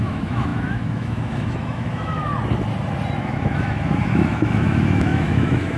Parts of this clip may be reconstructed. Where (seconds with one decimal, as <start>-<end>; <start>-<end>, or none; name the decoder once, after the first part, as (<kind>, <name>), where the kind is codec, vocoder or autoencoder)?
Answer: 0.0-2.3 (autoencoder, DAC-VAE); 3.2-5.8